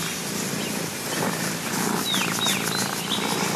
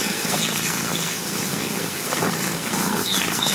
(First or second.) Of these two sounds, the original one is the first